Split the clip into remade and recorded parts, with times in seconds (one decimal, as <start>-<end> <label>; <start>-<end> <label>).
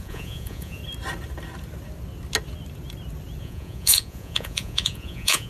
0.0-0.8 remade; 0.8-3.4 recorded; 3.4-5.5 remade